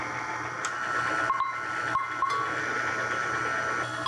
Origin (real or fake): real